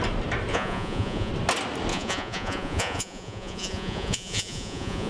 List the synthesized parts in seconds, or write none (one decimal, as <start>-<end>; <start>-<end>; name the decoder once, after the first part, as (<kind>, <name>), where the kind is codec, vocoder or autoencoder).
0.5-1.3 (vocoder, Vocos); 1.9-5.1